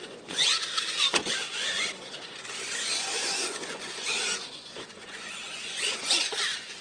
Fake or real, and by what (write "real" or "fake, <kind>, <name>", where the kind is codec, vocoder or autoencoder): fake, vocoder, Vocos